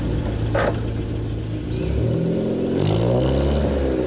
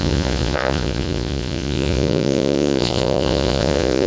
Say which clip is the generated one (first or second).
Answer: second